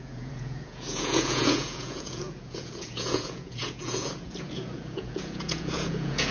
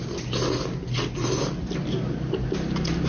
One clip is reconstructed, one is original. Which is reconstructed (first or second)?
first